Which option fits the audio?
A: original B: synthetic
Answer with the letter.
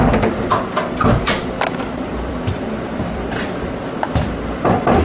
B